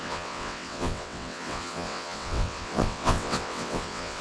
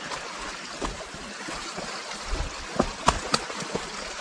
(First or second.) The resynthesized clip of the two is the first